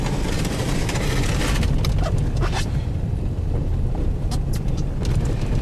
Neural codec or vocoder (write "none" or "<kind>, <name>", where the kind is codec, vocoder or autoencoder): vocoder, BigVGAN v2